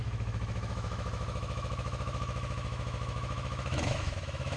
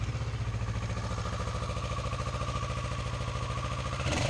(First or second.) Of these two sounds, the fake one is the first